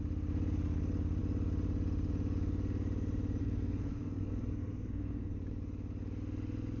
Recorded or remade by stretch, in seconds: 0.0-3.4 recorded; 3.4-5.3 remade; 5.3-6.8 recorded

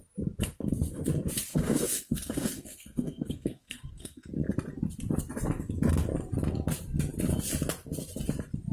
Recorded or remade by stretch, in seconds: 0.0-1.5 recorded; 1.5-4.3 remade; 4.3-8.7 recorded